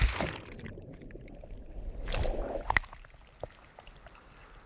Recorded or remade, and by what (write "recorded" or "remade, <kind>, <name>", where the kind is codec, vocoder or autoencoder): recorded